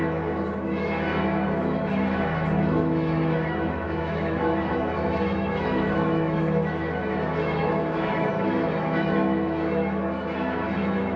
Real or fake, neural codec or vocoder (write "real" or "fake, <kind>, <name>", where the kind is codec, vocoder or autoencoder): fake, autoencoder, DAC-VAE